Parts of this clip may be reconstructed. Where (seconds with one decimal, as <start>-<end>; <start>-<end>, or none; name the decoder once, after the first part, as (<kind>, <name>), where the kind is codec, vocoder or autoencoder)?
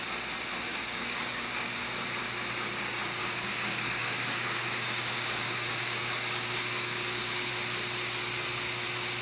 0.7-1.8 (codec, DAC); 3.2-7.5